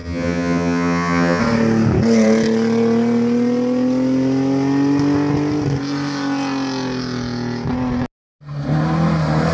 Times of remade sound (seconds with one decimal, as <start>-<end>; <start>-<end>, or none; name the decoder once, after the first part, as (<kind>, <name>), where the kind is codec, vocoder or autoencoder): 0.0-1.4 (vocoder, HiFi-GAN)